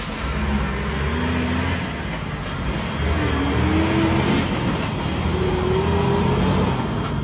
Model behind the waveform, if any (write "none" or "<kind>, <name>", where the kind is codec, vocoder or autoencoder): none